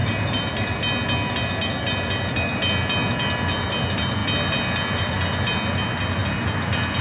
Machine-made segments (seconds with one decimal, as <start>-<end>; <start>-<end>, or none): none